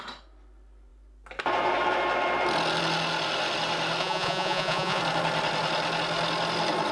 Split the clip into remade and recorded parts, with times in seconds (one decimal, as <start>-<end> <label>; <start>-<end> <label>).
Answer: 0.0-4.0 recorded; 4.0-5.0 remade; 5.0-6.9 recorded